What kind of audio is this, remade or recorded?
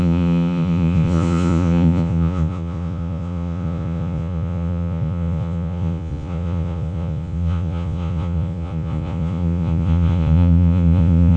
remade